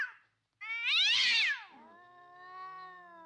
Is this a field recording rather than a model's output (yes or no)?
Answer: yes